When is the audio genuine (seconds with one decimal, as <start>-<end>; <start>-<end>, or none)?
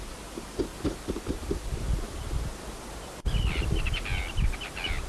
0.0-5.1